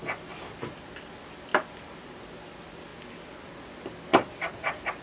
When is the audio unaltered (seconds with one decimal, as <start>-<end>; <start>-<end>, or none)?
0.0-1.5; 2.2-5.0